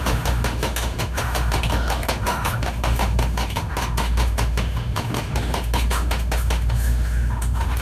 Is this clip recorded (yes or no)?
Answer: no